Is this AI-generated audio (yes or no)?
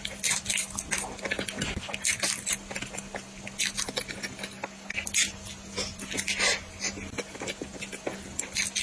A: no